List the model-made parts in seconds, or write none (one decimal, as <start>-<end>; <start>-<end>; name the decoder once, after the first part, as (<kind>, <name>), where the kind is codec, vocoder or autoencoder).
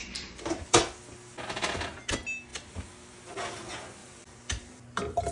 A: 0.0-0.5 (vocoder, BigVGAN v2); 4.0-4.8